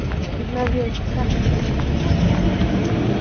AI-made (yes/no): no